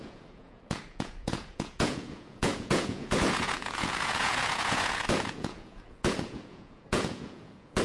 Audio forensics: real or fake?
fake